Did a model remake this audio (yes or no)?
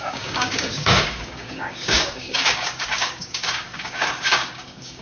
yes